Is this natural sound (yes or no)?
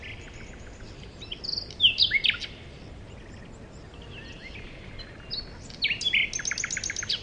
yes